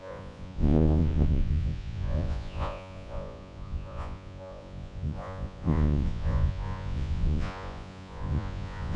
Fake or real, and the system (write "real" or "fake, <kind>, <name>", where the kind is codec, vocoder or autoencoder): fake, vocoder, Vocos